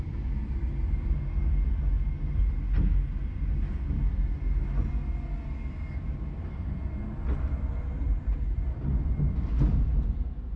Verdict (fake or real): real